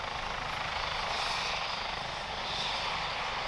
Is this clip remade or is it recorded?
recorded